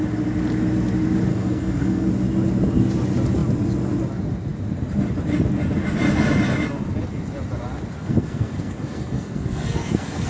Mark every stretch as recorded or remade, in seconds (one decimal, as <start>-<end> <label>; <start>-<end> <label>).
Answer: 0.0-1.3 recorded; 1.3-2.1 remade; 2.1-8.0 recorded; 8.0-10.3 remade